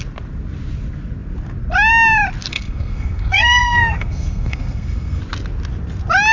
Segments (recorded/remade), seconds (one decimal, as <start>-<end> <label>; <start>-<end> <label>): 0.0-2.5 recorded; 2.5-5.2 remade; 5.2-6.3 recorded